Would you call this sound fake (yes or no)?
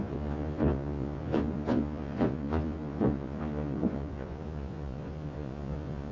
yes